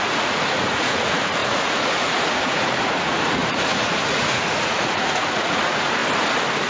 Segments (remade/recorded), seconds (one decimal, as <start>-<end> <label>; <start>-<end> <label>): 0.0-6.0 remade; 6.0-6.7 recorded